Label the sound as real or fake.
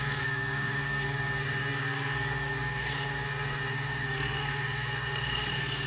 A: fake